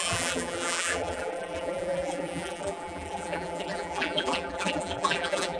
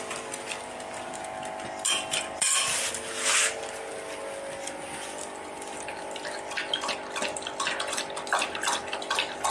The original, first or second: second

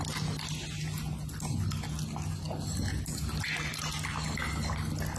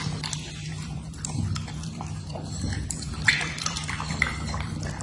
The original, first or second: first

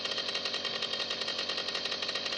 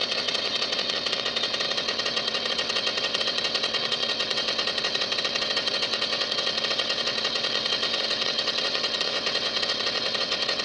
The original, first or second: first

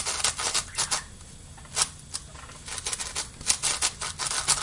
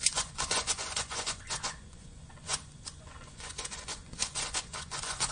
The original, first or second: first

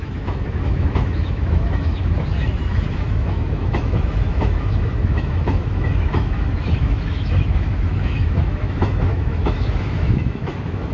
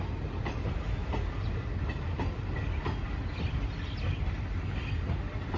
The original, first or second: second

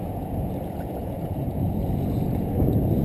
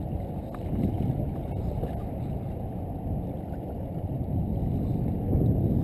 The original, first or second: second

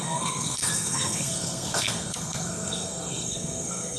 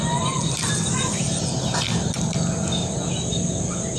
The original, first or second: second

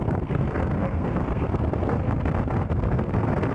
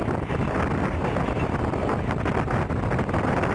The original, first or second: second